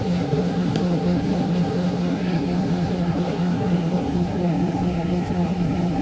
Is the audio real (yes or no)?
no